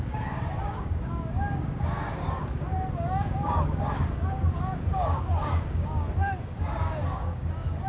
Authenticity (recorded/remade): remade